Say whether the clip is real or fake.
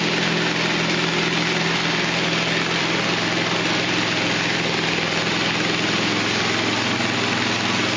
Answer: real